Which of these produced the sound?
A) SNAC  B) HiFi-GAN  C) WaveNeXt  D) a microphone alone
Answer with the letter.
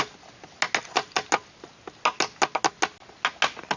D